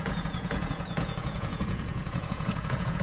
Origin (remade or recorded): remade